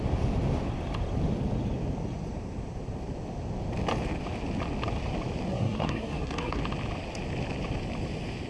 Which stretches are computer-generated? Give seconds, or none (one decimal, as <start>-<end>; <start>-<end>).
5.5-6.6